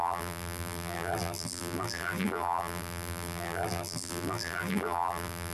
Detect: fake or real fake